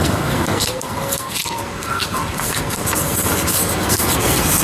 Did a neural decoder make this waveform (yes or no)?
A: yes